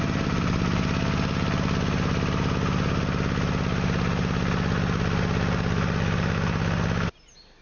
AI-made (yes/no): no